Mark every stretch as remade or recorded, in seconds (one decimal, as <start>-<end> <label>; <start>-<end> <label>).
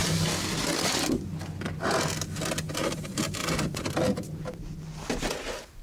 0.0-3.4 recorded; 3.4-4.6 remade; 4.6-5.8 recorded